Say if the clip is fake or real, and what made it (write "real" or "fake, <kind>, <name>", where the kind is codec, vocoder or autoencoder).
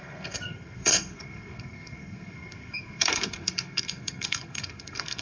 fake, codec, SNAC